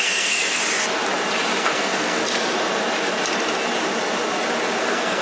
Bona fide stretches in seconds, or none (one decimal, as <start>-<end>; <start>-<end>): 0.6-1.6; 2.2-4.8